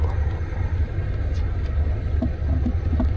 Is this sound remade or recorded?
recorded